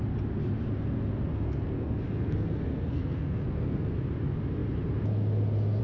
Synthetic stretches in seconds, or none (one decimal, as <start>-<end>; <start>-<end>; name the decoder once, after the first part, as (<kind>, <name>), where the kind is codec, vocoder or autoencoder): 1.3-3.9 (codec, SNAC)